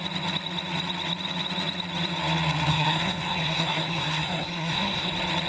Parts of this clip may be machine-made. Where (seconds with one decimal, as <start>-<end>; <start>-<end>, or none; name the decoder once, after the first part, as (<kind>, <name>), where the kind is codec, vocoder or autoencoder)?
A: 2.7-5.1 (codec, SNAC)